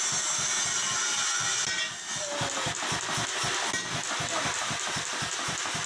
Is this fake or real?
real